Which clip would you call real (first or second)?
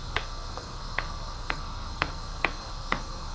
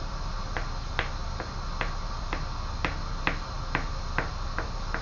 second